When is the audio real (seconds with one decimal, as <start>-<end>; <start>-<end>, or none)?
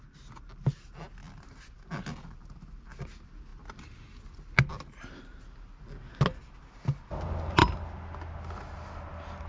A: 0.0-9.5